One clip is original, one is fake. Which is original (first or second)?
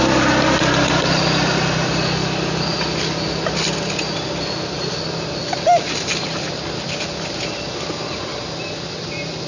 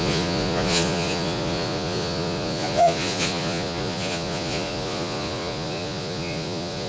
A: first